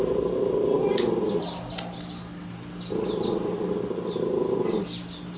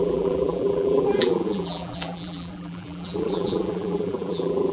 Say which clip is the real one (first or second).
first